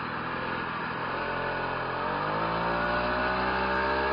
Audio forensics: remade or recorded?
recorded